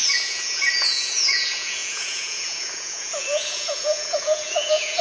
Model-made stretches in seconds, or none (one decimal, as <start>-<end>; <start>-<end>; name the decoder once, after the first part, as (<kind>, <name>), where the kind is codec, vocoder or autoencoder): 0.0-5.0 (vocoder, Vocos)